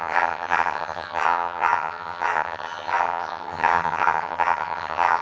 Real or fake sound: fake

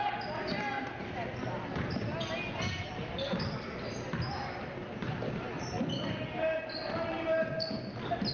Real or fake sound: real